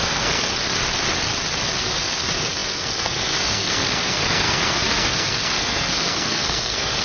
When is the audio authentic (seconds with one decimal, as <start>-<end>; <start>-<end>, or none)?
0.5-1.8